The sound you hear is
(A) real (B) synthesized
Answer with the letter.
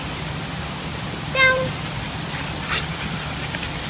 A